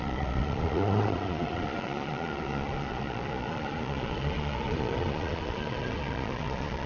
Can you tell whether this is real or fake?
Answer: fake